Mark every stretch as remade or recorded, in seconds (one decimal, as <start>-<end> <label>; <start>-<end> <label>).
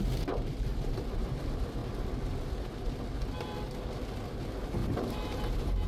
0.0-0.7 recorded; 0.7-1.4 remade; 1.4-4.8 recorded; 4.8-5.9 remade